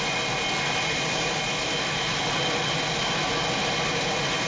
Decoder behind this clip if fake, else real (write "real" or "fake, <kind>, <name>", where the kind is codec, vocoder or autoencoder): real